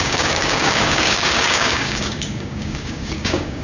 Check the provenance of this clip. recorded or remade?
remade